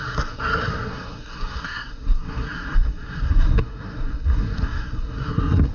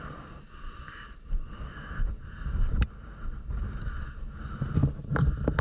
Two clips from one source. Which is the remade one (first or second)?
first